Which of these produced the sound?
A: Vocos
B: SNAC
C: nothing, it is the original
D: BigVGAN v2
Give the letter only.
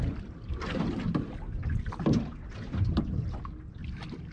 C